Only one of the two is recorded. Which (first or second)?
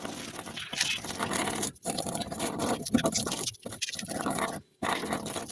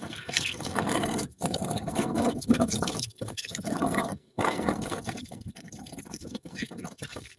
first